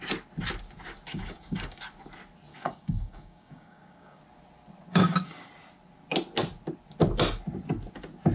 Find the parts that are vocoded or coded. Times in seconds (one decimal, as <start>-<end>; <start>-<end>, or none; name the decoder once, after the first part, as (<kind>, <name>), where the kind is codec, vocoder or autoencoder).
1.1-1.8 (codec, DAC); 2.5-4.2; 4.9-5.5